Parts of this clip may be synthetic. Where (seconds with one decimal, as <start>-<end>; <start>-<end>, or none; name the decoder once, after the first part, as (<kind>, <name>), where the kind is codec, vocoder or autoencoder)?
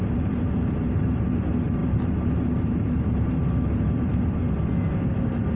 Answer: 0.0-4.4 (vocoder, BigVGAN v2)